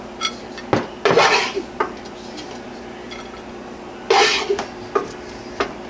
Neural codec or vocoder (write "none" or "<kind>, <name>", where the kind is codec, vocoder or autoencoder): none